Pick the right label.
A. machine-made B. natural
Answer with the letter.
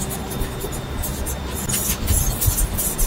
B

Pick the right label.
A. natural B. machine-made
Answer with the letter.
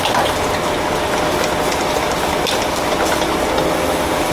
A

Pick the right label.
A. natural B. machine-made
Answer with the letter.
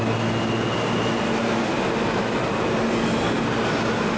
A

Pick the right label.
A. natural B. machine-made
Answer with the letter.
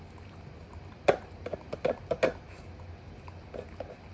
A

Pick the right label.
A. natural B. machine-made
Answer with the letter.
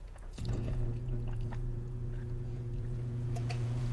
B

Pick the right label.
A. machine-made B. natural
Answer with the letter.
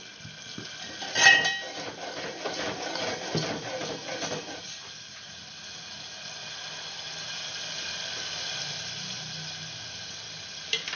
B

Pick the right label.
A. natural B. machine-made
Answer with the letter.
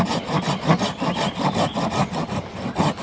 A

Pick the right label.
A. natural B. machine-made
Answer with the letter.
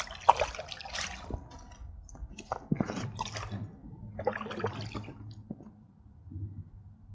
A